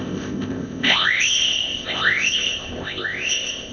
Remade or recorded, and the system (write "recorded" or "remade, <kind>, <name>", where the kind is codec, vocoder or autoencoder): remade, codec, ZipCodec